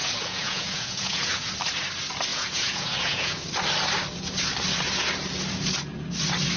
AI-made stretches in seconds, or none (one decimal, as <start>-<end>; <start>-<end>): 0.0-1.5; 2.3-3.4